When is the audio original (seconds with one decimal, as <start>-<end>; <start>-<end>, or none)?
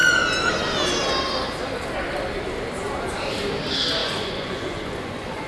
0.0-4.0